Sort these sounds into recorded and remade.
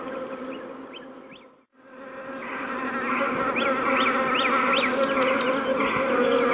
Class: recorded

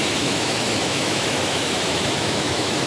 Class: remade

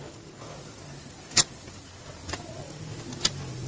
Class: recorded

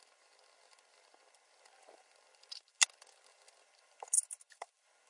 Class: recorded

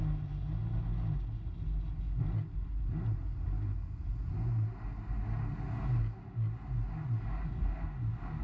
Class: recorded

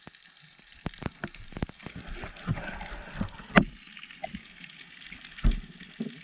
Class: recorded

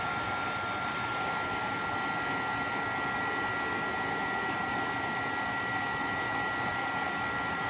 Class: recorded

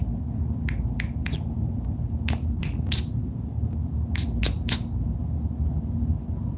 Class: recorded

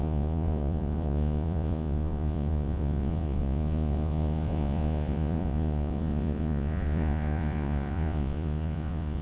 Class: remade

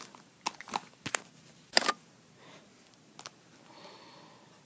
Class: recorded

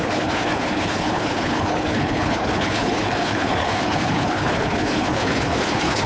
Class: remade